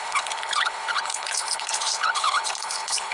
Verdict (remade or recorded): remade